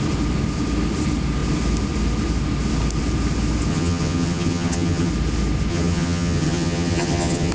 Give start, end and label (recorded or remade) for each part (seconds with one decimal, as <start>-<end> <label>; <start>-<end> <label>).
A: 0.0-3.7 recorded; 3.7-5.1 remade; 5.1-5.7 recorded; 5.7-7.5 remade